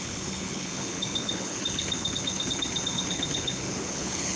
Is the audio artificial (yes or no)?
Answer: yes